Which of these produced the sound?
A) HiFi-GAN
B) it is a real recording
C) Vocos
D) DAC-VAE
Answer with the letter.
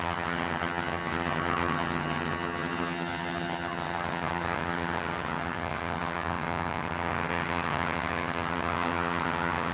A